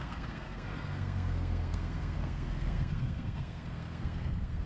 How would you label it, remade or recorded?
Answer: remade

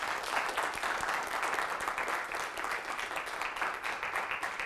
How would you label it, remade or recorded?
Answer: recorded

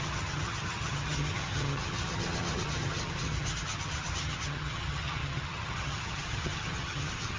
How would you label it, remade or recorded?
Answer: remade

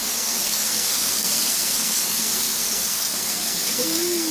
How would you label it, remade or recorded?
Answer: remade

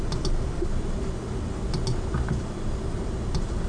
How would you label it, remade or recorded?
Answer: recorded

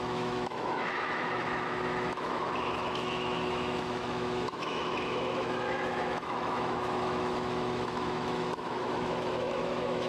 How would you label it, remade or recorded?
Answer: remade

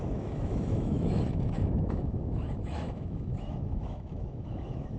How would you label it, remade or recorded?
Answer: remade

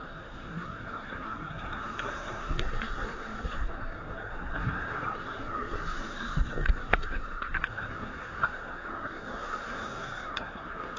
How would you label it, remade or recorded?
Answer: remade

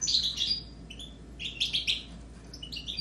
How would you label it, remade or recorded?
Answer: recorded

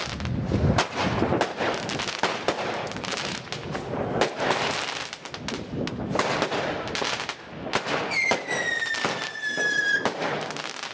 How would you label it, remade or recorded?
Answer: recorded